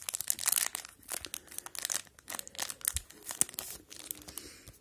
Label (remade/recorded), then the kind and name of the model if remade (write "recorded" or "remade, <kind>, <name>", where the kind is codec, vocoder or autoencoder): recorded